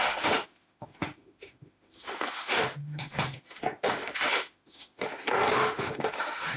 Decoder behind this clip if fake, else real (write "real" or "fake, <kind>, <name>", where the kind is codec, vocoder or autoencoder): fake, autoencoder, DAC-VAE